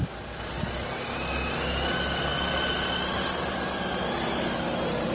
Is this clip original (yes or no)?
yes